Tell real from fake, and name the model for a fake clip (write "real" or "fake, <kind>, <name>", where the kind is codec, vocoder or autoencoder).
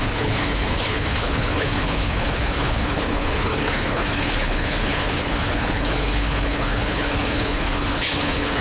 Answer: fake, codec, HILCodec